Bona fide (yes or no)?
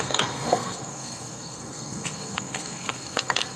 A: no